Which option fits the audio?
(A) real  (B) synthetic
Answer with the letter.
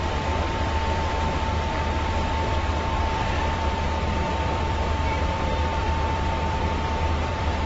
B